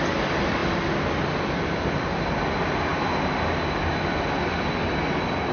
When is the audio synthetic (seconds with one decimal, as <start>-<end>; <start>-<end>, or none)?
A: none